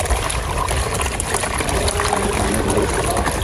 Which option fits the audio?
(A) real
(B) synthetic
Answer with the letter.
A